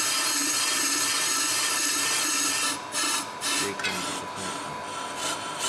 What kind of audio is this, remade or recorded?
recorded